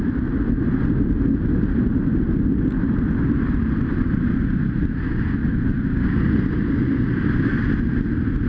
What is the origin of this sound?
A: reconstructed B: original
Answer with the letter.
B